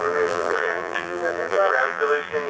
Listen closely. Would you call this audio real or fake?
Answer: fake